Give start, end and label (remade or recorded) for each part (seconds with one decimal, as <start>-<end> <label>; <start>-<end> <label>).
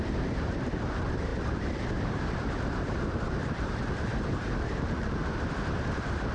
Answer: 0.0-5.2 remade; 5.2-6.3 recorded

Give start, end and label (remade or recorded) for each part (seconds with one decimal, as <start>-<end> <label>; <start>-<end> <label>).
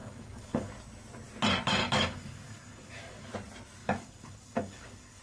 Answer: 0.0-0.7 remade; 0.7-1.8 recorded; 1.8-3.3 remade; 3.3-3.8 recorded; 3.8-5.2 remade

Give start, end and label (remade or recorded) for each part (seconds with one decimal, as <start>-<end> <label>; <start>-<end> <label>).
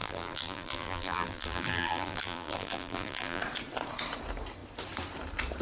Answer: 0.0-3.4 remade; 3.4-5.6 recorded